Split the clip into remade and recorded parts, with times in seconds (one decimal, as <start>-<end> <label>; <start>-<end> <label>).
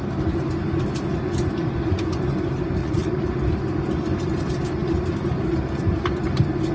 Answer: 0.0-2.8 recorded; 2.8-3.3 remade; 3.3-6.7 recorded